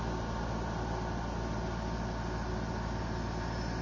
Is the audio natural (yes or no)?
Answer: yes